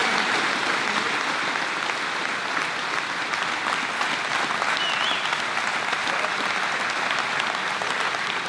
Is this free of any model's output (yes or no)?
yes